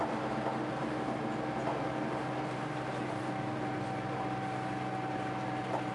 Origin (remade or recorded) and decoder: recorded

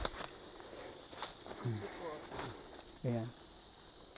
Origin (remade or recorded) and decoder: recorded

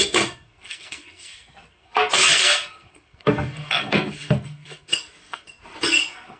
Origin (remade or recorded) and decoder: remade, codec, SNAC